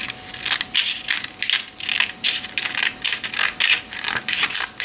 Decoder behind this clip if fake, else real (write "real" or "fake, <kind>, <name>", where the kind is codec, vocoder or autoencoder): real